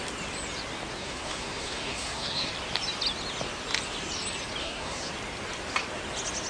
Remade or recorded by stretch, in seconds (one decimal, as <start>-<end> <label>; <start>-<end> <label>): 0.0-1.0 recorded; 1.0-2.5 remade; 2.5-4.6 recorded; 4.6-5.1 remade; 5.1-6.5 recorded